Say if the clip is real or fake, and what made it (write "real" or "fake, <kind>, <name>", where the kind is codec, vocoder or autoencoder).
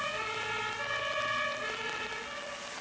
real